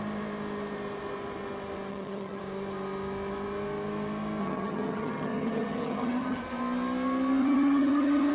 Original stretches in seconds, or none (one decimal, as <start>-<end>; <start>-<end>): 0.0-1.9; 2.4-4.4; 6.4-7.4